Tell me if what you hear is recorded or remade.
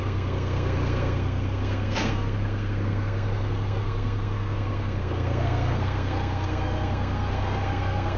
remade